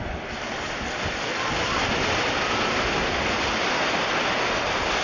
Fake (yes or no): no